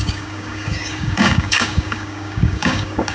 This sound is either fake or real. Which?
fake